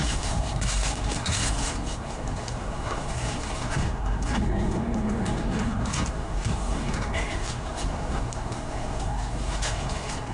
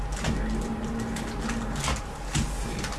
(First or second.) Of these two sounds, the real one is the second